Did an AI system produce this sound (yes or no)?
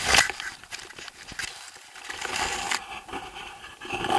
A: no